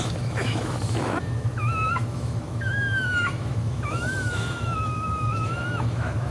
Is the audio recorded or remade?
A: remade